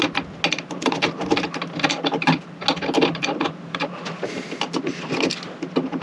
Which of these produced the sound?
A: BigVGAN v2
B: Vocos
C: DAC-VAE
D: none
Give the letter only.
D